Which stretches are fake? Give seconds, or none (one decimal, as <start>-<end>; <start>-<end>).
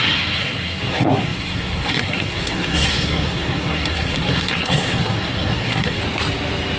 0.0-6.0